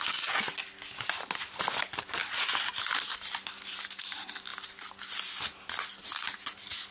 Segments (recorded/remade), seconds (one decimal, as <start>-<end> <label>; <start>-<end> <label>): 0.0-6.9 recorded